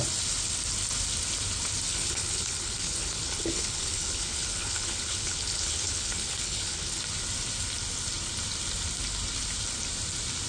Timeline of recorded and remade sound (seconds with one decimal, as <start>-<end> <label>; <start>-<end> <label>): 0.0-1.9 recorded; 1.9-7.0 remade; 7.0-10.5 recorded

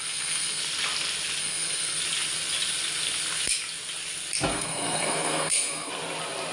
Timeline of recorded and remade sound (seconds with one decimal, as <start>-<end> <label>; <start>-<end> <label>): 0.0-0.6 remade; 0.6-1.4 recorded; 1.4-2.0 remade; 2.0-4.5 recorded; 4.5-5.9 remade; 5.9-6.5 recorded

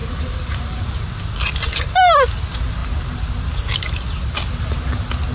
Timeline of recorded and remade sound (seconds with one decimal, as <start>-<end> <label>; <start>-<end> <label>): 0.0-0.8 remade; 0.8-5.3 recorded

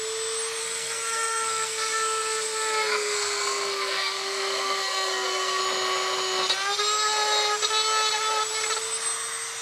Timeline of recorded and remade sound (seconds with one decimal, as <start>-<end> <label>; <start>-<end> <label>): 0.0-0.6 recorded; 0.6-5.6 remade; 5.6-9.6 recorded

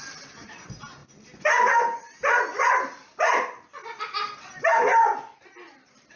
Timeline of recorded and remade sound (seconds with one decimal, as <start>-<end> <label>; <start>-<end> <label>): 0.0-1.0 recorded; 1.0-1.8 remade; 1.8-6.2 recorded

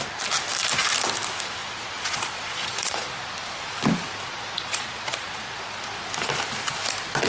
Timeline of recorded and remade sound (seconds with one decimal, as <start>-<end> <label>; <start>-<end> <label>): 0.0-1.6 recorded; 1.6-3.3 remade; 3.3-4.3 recorded; 4.3-5.8 remade; 5.8-7.3 recorded